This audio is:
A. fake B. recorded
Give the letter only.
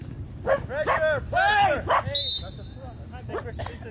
B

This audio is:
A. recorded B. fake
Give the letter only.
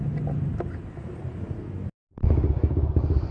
A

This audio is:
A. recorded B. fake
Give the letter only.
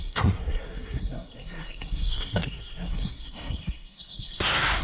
B